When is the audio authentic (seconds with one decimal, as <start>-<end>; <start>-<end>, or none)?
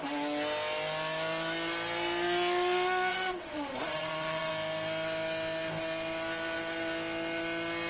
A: 0.0-3.1; 4.5-7.9